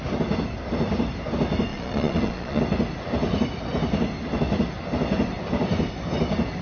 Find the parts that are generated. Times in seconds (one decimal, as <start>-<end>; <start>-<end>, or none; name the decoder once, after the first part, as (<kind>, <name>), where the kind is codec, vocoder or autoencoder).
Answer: 1.7-2.6 (vocoder, Vocos)